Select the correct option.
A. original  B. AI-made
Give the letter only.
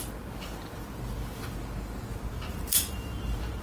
A